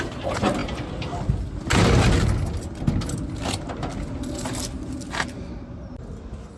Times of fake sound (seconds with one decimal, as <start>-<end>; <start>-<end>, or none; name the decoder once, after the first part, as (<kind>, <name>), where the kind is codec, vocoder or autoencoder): none